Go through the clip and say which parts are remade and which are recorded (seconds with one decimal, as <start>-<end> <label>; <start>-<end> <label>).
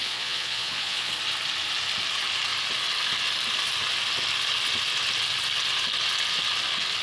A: 0.0-1.1 remade; 1.1-7.0 recorded